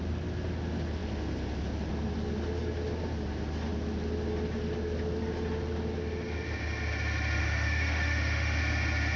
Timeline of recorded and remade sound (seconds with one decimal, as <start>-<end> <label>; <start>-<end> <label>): 0.0-7.4 recorded; 7.4-8.6 remade; 8.6-9.2 recorded